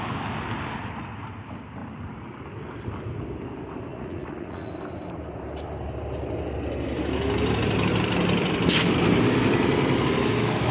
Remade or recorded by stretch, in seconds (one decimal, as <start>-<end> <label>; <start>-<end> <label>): 0.0-3.9 recorded; 3.9-4.7 remade; 4.7-10.7 recorded